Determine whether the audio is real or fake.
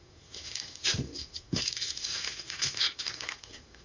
fake